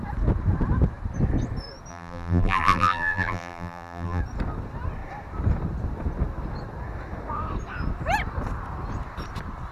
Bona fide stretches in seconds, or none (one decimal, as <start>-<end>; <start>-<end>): 0.0-1.9; 4.2-9.7